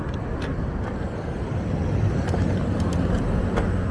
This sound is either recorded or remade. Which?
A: recorded